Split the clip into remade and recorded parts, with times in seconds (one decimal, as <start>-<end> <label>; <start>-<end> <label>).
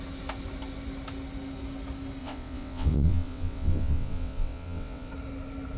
0.0-2.2 recorded; 2.2-5.1 remade; 5.1-5.8 recorded